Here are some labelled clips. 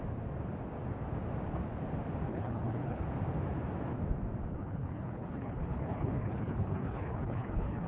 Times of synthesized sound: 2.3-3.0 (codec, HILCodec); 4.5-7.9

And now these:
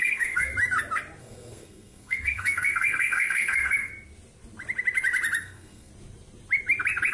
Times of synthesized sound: 0.0-0.5 (codec, SNAC); 1.2-3.9; 5.4-5.9

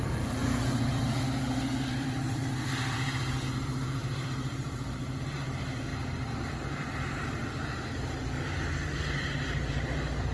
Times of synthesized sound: 0.0-10.3 (vocoder, BigVGAN v2)

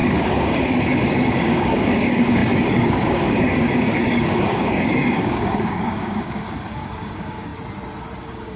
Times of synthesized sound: 0.0-7.5 (codec, DAC); 8.2-8.6

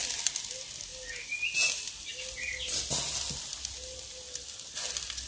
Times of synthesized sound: none

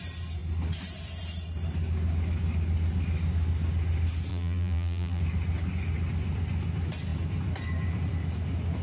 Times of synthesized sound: 4.3-5.2 (vocoder, BigVGAN v2)